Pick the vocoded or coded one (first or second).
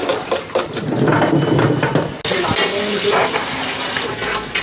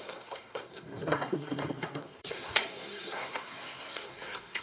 second